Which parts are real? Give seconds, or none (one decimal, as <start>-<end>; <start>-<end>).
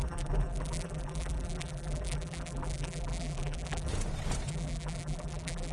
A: 3.9-4.5